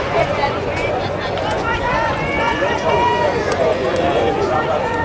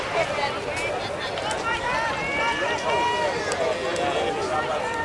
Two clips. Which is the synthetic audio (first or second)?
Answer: first